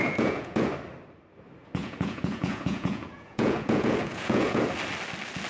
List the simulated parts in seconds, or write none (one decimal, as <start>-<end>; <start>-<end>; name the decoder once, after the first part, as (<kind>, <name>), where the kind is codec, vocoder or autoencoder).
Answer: 0.0-0.7 (vocoder, Vocos); 1.8-4.6